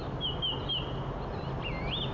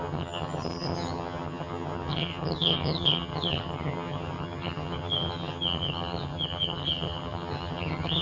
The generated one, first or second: second